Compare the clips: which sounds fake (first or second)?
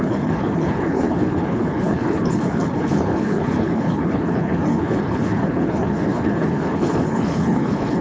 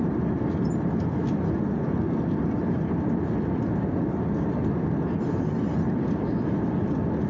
first